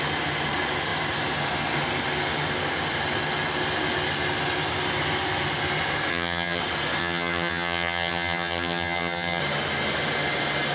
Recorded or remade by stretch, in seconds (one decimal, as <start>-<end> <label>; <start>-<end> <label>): 0.0-6.1 recorded; 6.1-6.6 remade; 6.6-7.0 recorded; 7.0-9.4 remade; 9.4-10.7 recorded